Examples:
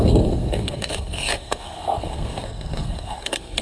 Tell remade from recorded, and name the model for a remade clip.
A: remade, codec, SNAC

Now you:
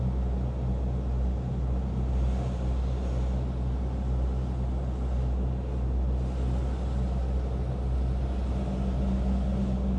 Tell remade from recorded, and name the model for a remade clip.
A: recorded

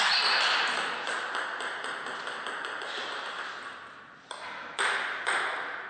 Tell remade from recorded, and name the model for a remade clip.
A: recorded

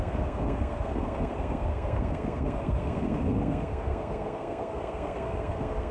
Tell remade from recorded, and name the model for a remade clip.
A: remade, codec, SNAC